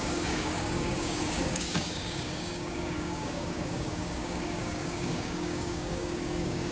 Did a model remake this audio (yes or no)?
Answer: yes